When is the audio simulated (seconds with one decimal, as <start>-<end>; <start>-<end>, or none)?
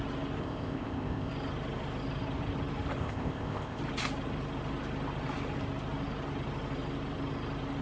0.4-1.3; 3.0-3.8